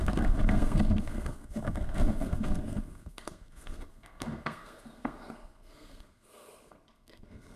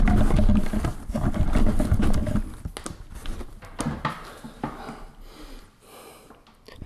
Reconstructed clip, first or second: first